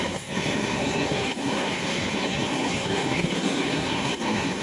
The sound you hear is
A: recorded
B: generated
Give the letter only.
B